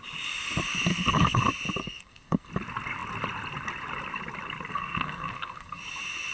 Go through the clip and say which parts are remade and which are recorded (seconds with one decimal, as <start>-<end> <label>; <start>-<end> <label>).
0.0-0.9 recorded; 0.9-1.4 remade; 1.4-1.8 recorded; 1.8-2.5 remade; 2.5-4.7 recorded; 4.7-5.8 remade; 5.8-6.3 recorded